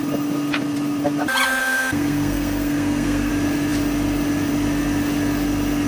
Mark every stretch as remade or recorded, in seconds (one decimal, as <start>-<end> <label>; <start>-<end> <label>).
0.0-1.6 recorded; 1.6-3.3 remade; 3.3-5.9 recorded